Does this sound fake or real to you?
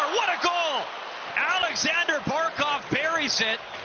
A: real